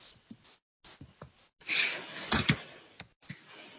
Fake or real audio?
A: real